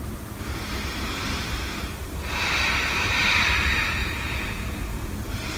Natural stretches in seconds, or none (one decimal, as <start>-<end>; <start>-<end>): 0.0-4.0; 4.5-5.6